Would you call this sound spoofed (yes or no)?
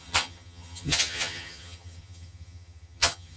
yes